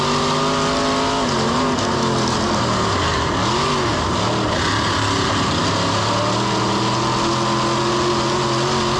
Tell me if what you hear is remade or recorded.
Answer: recorded